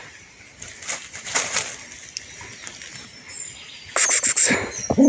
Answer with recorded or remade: recorded